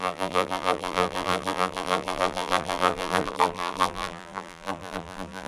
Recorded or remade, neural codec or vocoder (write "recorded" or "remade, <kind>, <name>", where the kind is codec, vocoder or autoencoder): remade, vocoder, BigVGAN v2